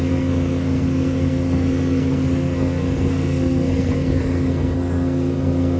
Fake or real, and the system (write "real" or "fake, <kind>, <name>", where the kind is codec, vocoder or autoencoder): fake, codec, SNAC